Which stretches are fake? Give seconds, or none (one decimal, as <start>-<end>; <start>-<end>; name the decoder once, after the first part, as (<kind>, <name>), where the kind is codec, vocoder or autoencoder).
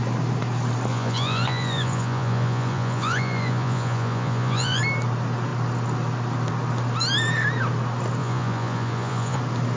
0.9-4.8 (vocoder, Vocos); 8.2-9.4